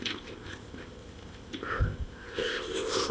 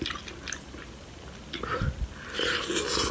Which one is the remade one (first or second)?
first